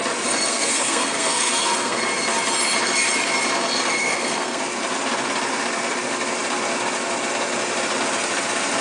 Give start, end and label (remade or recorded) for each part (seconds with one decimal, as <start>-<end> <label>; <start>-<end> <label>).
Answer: 0.0-0.5 recorded; 0.5-2.0 remade; 2.0-4.0 recorded; 4.0-4.6 remade; 4.6-8.8 recorded